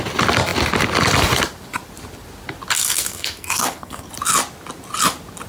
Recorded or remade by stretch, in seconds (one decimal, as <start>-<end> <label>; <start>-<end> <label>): 0.0-2.7 recorded; 2.7-4.1 remade; 4.1-5.5 recorded